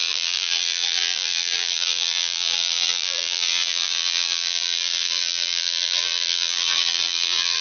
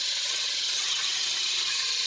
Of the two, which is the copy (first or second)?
first